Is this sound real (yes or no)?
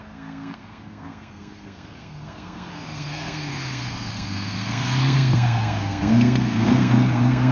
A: no